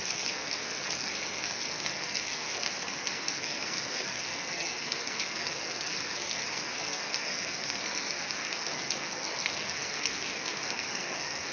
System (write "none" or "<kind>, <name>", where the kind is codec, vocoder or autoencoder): codec, SNAC